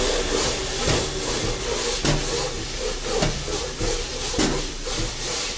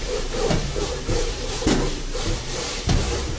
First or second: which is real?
first